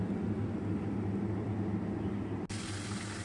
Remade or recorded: recorded